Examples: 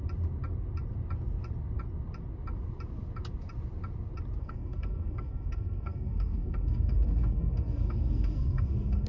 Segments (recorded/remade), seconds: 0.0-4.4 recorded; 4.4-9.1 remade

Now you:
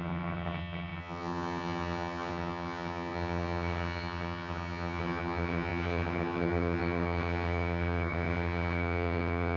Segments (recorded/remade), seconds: 0.0-9.6 remade

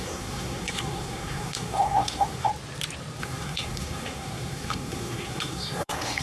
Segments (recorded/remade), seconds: 0.0-2.5 remade; 2.5-3.2 recorded; 3.2-6.2 remade

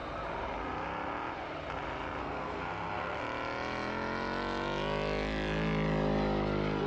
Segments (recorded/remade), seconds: 0.0-2.2 recorded; 2.2-3.2 remade; 3.2-6.9 recorded

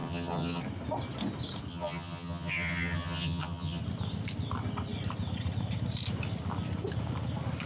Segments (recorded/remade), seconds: 0.0-0.6 remade; 0.6-1.7 recorded; 1.7-3.8 remade; 3.8-7.7 recorded

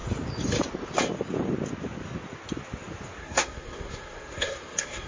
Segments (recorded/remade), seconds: 0.0-3.2 recorded; 3.2-5.1 remade

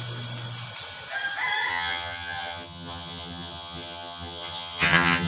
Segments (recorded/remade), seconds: 0.0-1.7 recorded; 1.7-5.3 remade

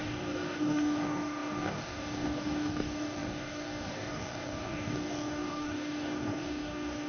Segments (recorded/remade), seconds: 0.0-7.1 remade